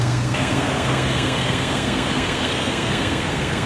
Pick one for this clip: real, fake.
fake